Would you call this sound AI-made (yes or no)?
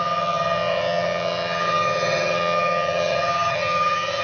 yes